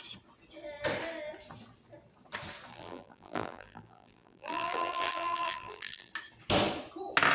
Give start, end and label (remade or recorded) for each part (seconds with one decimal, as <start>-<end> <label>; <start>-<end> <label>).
0.0-2.7 recorded; 2.7-6.1 remade; 6.1-7.3 recorded